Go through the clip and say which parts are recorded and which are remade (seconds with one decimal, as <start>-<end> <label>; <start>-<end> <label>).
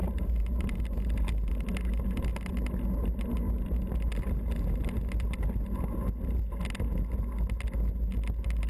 0.0-1.5 remade; 1.5-8.7 recorded